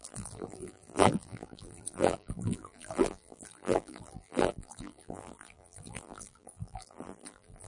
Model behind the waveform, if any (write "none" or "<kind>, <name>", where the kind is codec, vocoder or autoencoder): vocoder, BigVGAN v2